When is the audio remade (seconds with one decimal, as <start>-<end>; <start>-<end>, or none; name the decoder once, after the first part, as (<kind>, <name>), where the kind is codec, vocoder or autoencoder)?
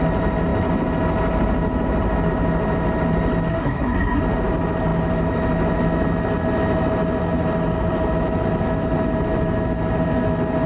3.5-4.2 (codec, SNAC)